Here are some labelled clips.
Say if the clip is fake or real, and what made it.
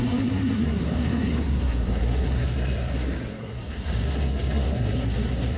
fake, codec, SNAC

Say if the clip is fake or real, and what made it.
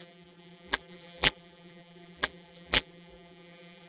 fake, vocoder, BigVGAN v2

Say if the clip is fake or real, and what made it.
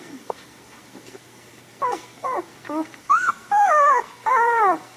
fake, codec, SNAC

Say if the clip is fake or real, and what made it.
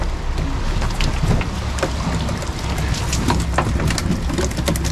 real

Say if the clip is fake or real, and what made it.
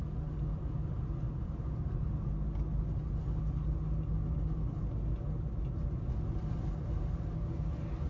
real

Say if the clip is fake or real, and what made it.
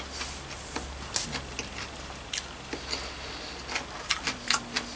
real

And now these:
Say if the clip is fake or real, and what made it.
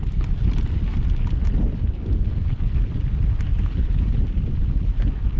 real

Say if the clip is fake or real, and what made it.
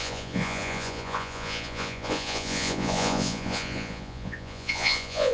fake, vocoder, Vocos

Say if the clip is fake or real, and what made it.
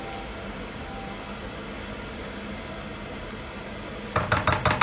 real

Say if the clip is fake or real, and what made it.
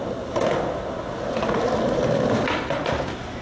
real